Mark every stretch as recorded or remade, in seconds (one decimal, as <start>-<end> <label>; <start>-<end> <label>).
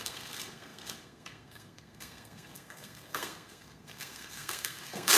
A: 0.0-5.2 remade